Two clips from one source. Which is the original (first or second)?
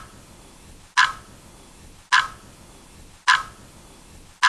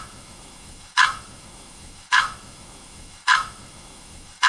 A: first